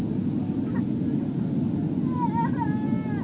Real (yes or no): yes